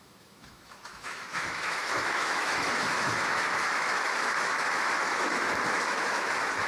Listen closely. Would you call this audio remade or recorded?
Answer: remade